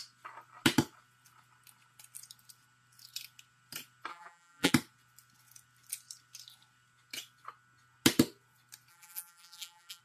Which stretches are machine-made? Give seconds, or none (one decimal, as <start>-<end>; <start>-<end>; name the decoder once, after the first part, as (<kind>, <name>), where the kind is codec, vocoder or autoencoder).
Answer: 4.1-4.7 (vocoder, BigVGAN v2); 8.9-10.0